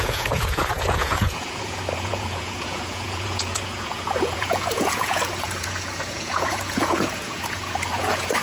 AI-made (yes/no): yes